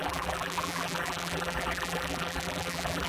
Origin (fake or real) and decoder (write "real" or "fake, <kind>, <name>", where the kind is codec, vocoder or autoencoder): fake, vocoder, BigVGAN v2